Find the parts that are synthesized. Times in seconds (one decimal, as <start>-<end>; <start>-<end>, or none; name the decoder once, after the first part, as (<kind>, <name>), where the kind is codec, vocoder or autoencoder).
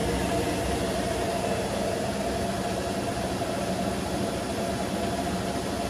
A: none